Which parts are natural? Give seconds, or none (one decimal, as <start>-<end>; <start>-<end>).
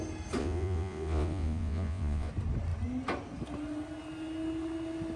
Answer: 0.0-0.4; 2.3-5.2